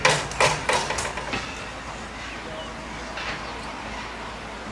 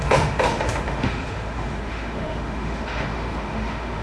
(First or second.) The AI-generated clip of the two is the second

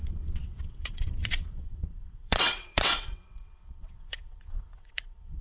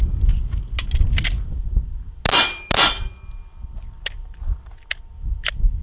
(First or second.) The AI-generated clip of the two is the first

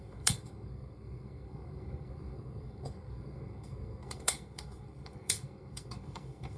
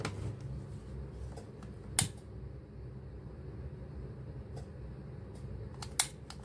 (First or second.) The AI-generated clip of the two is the first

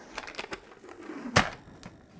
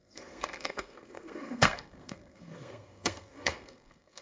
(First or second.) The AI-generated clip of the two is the second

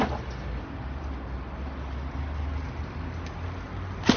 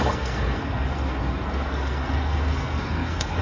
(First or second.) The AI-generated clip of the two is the second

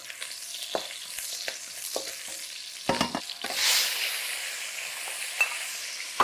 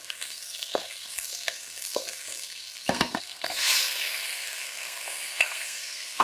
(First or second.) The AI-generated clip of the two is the second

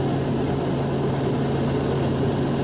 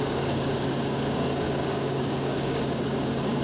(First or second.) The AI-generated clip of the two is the second